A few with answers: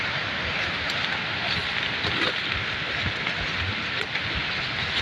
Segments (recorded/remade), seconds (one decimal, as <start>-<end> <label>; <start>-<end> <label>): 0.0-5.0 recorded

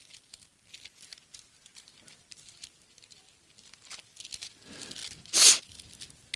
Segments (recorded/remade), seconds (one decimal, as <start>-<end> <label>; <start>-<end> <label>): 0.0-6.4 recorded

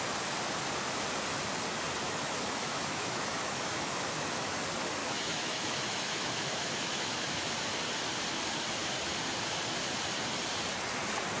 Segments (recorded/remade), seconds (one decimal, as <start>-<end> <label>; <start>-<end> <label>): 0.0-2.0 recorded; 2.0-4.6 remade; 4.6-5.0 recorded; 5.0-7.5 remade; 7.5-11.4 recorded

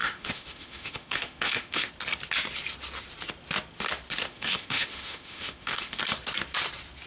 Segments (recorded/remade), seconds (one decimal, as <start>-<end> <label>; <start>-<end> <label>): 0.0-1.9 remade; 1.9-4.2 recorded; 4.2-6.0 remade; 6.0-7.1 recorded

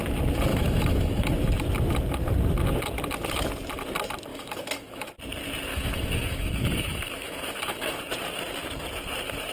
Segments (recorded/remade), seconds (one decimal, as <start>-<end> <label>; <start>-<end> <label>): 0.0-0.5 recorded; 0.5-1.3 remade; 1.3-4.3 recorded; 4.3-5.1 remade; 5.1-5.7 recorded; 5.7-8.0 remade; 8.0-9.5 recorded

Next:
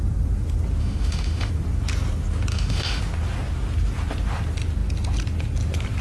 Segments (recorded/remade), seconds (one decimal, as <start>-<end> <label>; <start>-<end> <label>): 0.0-0.8 recorded; 0.8-1.5 remade; 1.5-2.5 recorded; 2.5-3.0 remade; 3.0-6.0 recorded

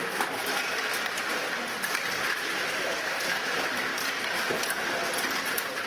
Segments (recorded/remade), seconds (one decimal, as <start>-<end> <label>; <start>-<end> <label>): 0.0-0.4 remade; 0.4-2.3 recorded; 2.3-3.9 remade; 3.9-5.9 recorded